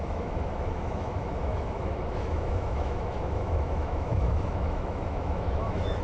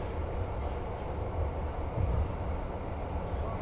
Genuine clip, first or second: second